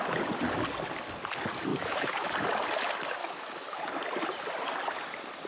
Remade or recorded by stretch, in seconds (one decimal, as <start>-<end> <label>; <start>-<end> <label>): 0.0-1.7 recorded; 1.7-2.3 remade; 2.3-3.2 recorded; 3.2-3.8 remade; 3.8-5.5 recorded